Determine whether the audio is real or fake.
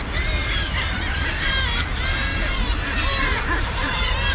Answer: fake